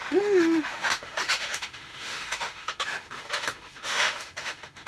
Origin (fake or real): fake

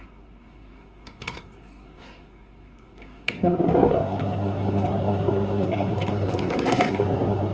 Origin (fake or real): fake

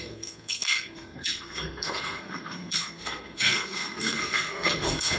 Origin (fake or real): fake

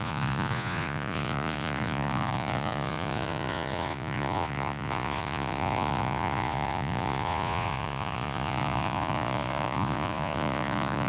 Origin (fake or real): fake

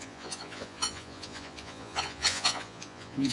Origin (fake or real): fake